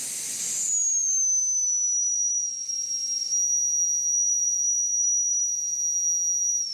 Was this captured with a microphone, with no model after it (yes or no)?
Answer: yes